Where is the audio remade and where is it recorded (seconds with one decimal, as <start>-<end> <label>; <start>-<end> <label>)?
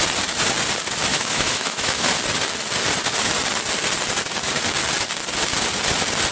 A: 0.0-1.1 recorded; 1.1-2.1 remade; 2.1-6.3 recorded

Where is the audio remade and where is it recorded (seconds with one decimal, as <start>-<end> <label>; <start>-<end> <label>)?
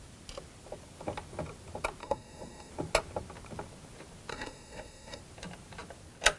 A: 0.0-2.0 recorded; 2.0-2.7 remade; 2.7-4.3 recorded; 4.3-5.2 remade; 5.2-6.4 recorded